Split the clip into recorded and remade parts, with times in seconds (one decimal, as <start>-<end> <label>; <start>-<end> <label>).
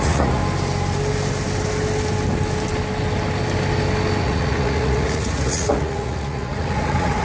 0.0-0.4 remade; 0.4-4.2 recorded; 4.2-7.2 remade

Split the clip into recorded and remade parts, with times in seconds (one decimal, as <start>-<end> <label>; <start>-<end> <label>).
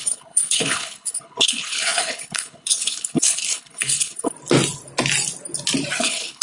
0.0-4.3 remade; 4.3-6.0 recorded; 6.0-6.4 remade